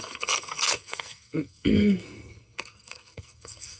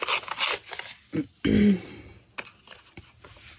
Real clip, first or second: second